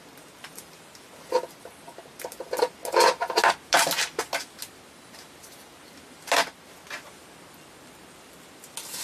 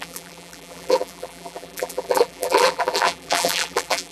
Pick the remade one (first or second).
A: second